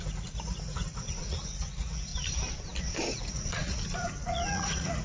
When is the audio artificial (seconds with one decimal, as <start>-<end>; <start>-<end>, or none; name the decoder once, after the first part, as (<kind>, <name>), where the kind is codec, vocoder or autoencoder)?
0.0-2.1 (vocoder, Vocos); 3.1-5.0